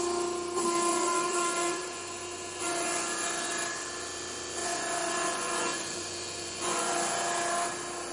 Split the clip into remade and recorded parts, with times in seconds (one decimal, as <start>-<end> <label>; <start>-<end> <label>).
0.0-0.9 recorded; 0.9-3.5 remade; 3.5-4.6 recorded; 4.6-6.9 remade; 6.9-8.1 recorded